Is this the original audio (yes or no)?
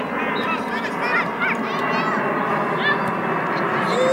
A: yes